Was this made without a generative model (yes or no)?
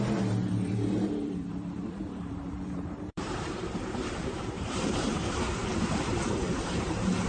no